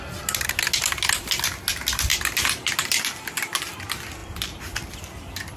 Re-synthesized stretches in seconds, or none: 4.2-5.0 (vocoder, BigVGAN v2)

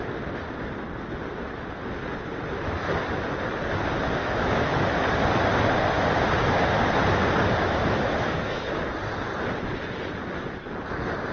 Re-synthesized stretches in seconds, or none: 4.2-4.8 (autoencoder, DAC-VAE); 7.6-8.6

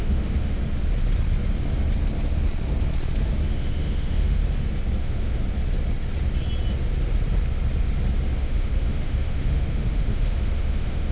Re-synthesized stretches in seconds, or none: 0.0-0.6 (autoencoder, DAC-VAE); 3.5-4.4; 5.0-5.4; 8.4-11.1

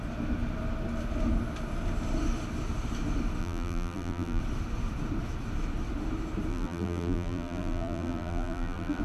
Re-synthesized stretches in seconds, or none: 3.4-4.4 (vocoder, BigVGAN v2); 6.5-9.0

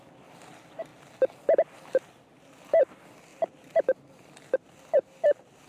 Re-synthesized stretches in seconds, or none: none